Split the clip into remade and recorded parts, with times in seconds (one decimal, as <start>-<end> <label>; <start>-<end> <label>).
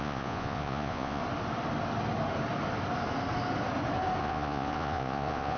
0.0-1.2 remade; 1.2-4.2 recorded; 4.2-5.6 remade